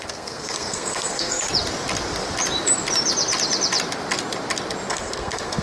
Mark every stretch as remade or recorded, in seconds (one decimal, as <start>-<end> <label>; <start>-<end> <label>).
0.0-1.5 remade; 1.5-4.9 recorded; 4.9-5.6 remade